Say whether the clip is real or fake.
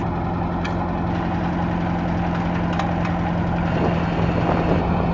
real